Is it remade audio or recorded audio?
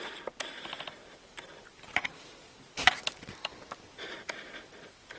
remade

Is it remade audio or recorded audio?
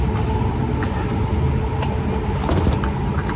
recorded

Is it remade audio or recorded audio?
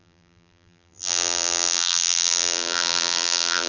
remade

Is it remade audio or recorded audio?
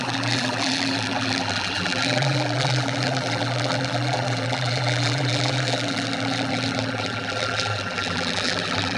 remade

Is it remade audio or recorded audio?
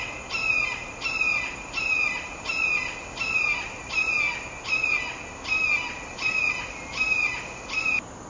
recorded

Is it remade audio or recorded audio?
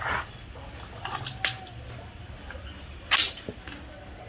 recorded